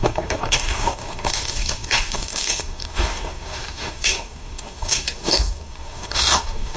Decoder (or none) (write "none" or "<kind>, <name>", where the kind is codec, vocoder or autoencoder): codec, DAC